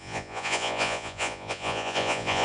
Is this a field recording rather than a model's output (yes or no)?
no